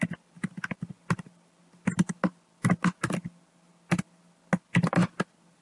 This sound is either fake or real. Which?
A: real